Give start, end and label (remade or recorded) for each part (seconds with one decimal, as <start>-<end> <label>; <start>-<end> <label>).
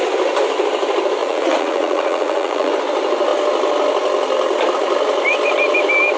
0.0-1.2 recorded; 1.2-2.7 remade; 2.7-6.2 recorded